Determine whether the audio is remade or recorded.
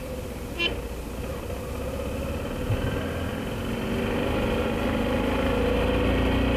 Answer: recorded